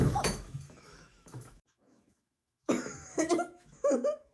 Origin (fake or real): fake